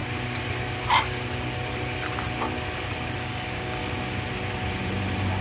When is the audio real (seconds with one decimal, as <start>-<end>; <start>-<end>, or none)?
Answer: 0.0-3.2; 3.8-5.4